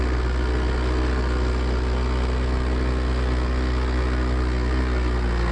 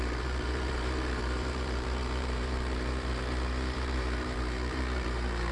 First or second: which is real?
first